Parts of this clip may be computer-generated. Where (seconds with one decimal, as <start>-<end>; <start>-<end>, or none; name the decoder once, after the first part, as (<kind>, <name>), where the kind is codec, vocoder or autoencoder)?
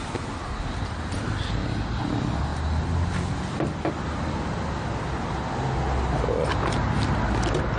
none